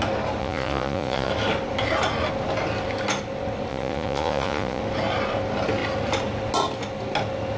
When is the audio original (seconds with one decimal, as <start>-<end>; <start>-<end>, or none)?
0.0-0.4; 1.3-3.7; 4.8-7.6